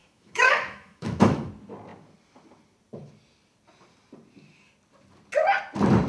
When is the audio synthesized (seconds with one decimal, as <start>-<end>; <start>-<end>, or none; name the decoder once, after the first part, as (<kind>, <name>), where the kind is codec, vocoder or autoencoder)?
0.0-1.5 (autoencoder, DAC-VAE)